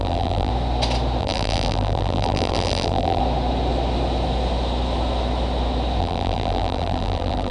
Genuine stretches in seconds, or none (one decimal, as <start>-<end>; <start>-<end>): 0.5-1.2; 3.2-6.0